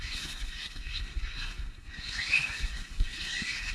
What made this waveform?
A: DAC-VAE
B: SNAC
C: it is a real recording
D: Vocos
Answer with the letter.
B